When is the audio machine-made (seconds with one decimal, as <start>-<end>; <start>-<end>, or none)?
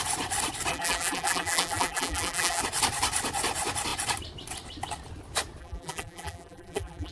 0.7-2.6; 5.6-7.1